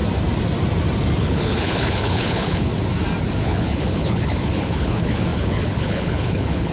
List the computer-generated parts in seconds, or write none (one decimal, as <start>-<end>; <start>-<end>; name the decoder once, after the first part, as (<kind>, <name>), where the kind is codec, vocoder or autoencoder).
1.2-2.7 (codec, HILCodec); 3.4-6.7